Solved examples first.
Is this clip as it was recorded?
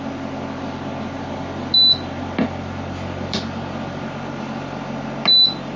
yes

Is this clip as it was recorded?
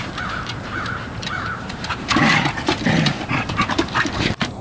no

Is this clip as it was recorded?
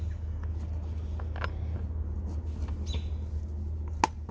yes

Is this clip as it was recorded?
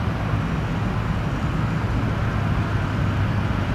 yes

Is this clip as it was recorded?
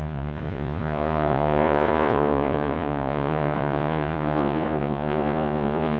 no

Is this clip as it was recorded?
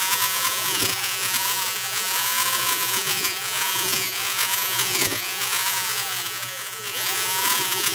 no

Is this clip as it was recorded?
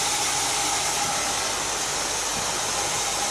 yes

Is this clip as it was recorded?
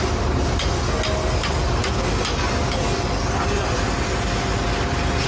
yes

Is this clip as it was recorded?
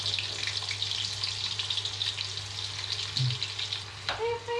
yes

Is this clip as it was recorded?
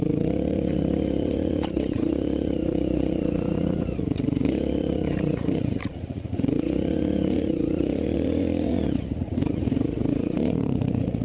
no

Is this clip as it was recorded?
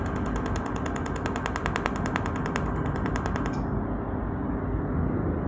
yes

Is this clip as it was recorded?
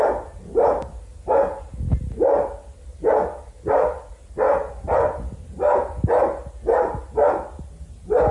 yes